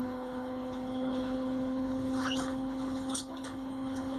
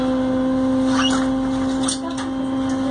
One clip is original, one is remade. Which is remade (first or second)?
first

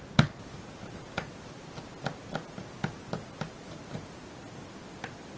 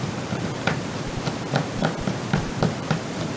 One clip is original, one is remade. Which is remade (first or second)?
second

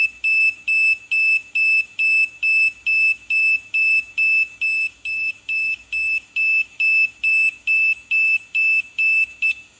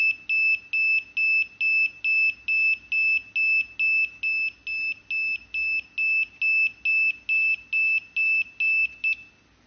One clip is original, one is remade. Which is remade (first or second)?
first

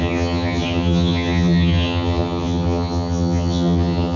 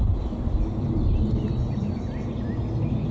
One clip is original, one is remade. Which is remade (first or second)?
first